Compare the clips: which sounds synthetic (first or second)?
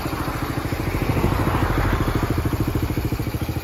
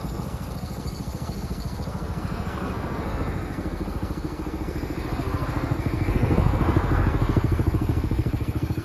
second